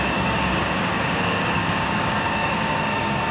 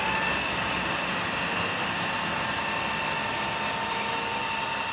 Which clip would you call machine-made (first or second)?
first